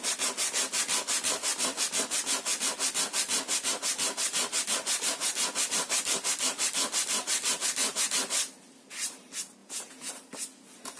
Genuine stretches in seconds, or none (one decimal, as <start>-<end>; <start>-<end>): 0.0-9.6; 10.1-11.0